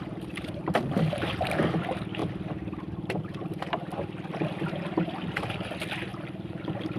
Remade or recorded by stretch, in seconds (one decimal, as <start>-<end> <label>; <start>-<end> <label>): 0.0-6.1 recorded; 6.1-6.6 remade; 6.6-7.0 recorded